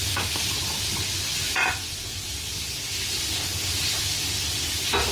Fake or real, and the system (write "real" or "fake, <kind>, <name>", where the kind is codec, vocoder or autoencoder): fake, vocoder, BigVGAN v2